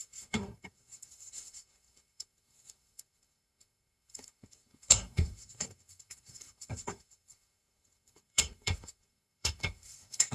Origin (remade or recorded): remade